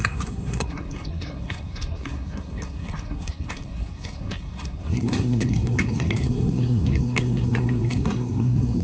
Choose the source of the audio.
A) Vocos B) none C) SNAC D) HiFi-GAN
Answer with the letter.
C